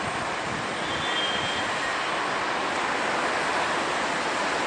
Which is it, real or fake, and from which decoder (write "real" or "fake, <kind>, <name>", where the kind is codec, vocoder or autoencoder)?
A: real